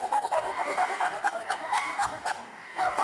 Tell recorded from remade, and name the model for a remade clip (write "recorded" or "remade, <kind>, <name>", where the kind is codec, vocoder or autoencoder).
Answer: remade, codec, DAC